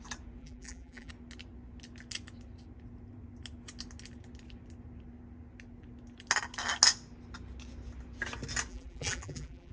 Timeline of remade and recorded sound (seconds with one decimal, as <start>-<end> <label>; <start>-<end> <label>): 0.0-0.4 recorded; 0.4-1.1 remade; 1.1-8.7 recorded; 8.7-9.7 remade